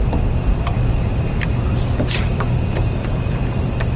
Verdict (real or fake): real